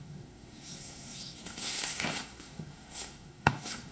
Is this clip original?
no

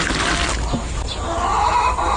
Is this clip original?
yes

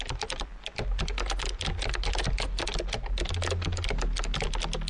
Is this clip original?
yes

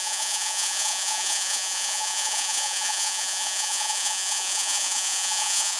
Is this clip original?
no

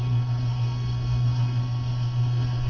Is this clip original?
no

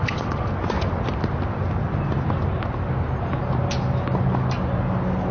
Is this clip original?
yes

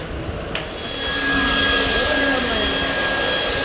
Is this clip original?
yes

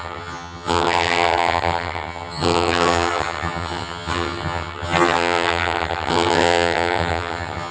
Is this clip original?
no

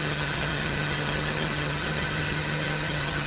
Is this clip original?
no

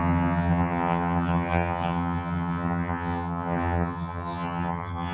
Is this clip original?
no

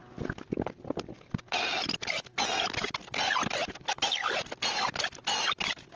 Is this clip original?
yes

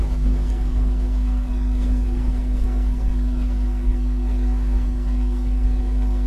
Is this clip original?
no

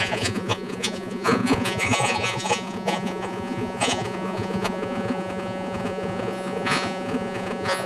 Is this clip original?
no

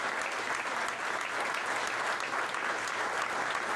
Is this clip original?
yes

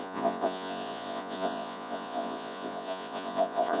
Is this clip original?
no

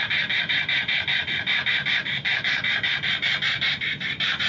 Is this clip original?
yes